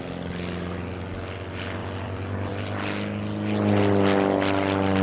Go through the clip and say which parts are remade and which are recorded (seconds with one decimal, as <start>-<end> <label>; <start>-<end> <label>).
0.0-1.8 recorded; 1.8-2.5 remade; 2.5-5.0 recorded